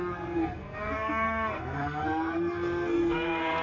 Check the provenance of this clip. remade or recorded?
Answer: remade